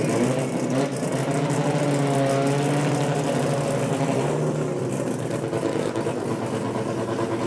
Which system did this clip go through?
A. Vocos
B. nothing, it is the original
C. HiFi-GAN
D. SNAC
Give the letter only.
B